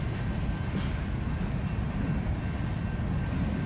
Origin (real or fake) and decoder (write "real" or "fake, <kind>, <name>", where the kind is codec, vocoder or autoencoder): real